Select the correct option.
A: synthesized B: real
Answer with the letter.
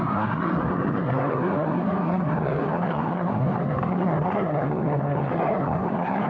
A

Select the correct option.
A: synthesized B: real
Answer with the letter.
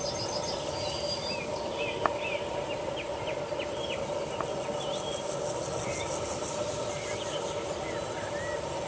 B